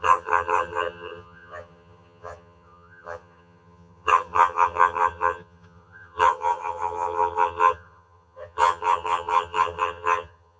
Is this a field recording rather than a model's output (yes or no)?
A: no